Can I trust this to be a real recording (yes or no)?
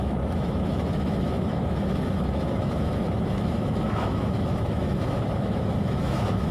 no